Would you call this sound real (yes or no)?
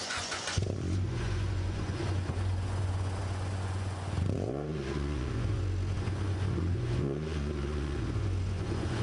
no